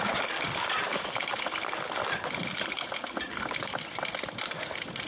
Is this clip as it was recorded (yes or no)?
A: yes